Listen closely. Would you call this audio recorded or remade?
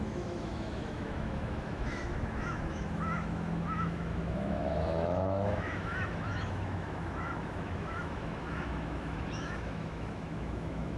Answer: remade